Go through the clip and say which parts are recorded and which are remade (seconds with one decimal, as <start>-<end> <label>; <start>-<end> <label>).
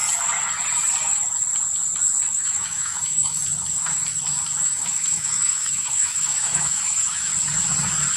0.0-2.3 recorded; 2.3-3.4 remade; 3.4-4.6 recorded; 4.6-7.3 remade; 7.3-8.2 recorded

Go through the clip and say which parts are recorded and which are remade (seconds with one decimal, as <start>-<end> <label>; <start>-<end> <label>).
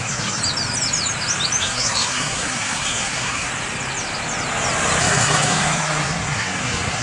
0.0-0.4 remade; 0.4-1.6 recorded; 1.6-3.5 remade; 3.5-5.0 recorded; 5.0-7.0 remade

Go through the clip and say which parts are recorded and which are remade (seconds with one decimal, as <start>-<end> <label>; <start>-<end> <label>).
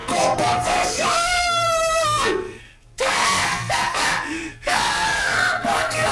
0.0-6.1 remade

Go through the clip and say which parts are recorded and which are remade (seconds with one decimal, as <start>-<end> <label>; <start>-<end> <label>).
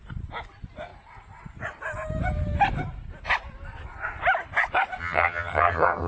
0.0-5.0 recorded; 5.0-6.1 remade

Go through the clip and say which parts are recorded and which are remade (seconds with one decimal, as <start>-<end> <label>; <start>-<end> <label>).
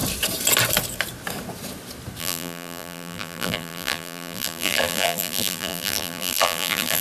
0.0-2.2 recorded; 2.2-7.0 remade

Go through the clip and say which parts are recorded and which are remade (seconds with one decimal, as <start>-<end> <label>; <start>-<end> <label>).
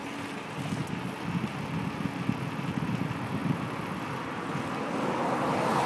0.0-5.9 recorded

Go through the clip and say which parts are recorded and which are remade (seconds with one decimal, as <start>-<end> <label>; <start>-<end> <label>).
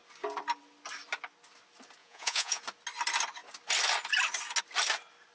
0.0-2.0 recorded; 2.0-2.6 remade; 2.6-5.3 recorded